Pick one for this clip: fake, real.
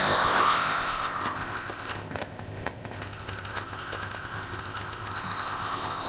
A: fake